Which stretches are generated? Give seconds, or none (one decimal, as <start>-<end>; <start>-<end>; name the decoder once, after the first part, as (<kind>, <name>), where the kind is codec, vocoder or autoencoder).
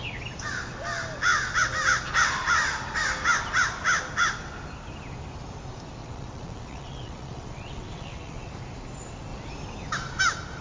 6.0-8.5 (vocoder, WaveNeXt)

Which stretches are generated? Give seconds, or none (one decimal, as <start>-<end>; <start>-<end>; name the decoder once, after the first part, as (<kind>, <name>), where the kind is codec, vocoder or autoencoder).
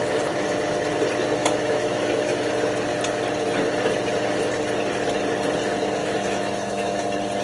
1.4-2.5 (autoencoder, DAC-VAE); 6.0-7.0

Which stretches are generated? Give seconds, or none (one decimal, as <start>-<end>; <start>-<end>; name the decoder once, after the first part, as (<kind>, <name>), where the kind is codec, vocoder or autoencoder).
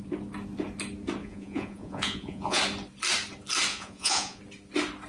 1.2-2.6 (vocoder, Vocos); 3.7-4.4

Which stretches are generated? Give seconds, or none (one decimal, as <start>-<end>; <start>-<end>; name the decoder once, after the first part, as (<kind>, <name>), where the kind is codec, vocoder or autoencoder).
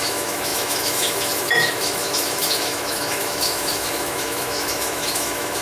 0.0-5.6 (autoencoder, DAC-VAE)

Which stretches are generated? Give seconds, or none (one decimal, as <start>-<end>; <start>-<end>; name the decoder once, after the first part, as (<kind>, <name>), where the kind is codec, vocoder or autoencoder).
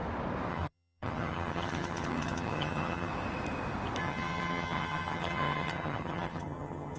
0.5-3.1 (vocoder, HiFi-GAN); 4.0-7.0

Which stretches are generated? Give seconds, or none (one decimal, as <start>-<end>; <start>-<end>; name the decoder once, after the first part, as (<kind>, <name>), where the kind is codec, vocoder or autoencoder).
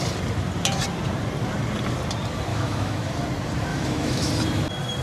2.5-3.1 (autoencoder, DAC-VAE); 3.7-4.3